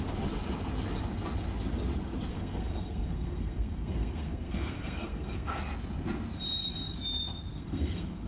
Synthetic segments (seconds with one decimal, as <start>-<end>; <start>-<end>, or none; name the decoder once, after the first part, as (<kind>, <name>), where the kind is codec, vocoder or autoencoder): 2.3-5.6 (codec, SNAC); 7.5-8.3